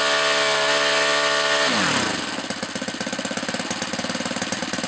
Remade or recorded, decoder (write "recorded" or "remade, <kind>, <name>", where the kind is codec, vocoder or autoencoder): recorded